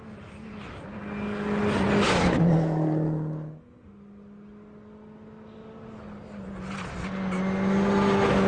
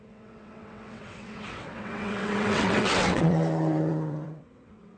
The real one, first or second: first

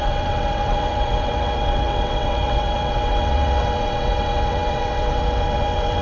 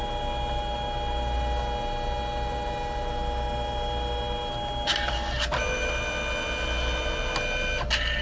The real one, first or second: second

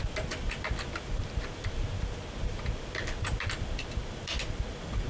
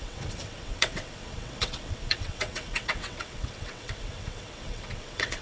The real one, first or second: first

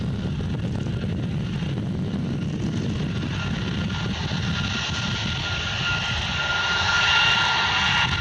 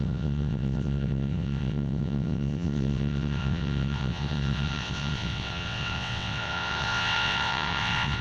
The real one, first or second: first